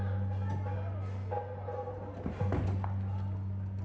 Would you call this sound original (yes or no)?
yes